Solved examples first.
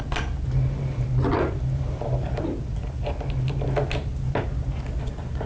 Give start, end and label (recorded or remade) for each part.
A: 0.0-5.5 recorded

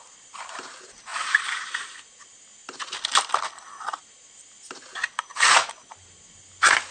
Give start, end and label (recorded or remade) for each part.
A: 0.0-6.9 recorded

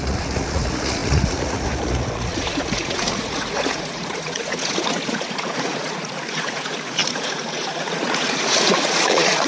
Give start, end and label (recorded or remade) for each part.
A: 0.0-9.5 remade

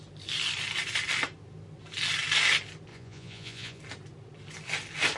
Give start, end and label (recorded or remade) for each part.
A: 0.0-2.9 recorded; 2.9-3.8 remade; 3.8-5.2 recorded

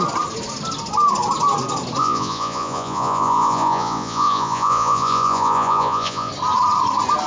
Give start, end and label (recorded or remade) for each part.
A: 0.0-2.0 recorded; 2.0-6.3 remade; 6.3-7.3 recorded

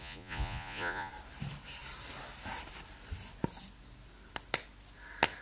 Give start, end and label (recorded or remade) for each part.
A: 0.0-1.1 remade; 1.1-5.4 recorded

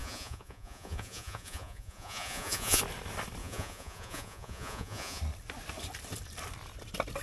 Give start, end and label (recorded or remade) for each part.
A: 0.0-2.8 remade; 2.8-3.4 recorded; 3.4-5.2 remade; 5.2-7.2 recorded

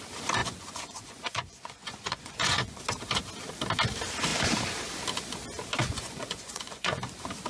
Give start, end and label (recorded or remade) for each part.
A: 0.0-0.4 recorded; 0.4-2.8 remade; 2.8-5.8 recorded; 5.8-7.0 remade; 7.0-7.5 recorded